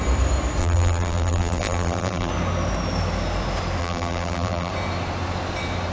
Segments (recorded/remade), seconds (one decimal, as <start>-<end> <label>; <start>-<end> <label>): 0.0-0.6 recorded; 0.6-2.3 remade; 2.3-3.8 recorded; 3.8-4.7 remade; 4.7-5.9 recorded